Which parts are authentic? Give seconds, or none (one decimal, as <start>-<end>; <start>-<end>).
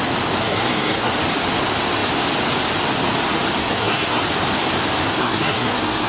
0.0-0.4; 1.1-3.6; 4.2-5.2